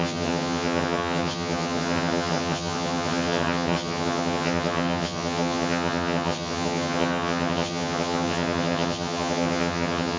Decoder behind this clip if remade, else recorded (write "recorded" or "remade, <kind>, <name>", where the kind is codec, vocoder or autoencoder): remade, vocoder, HiFi-GAN